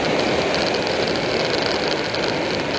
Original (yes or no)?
yes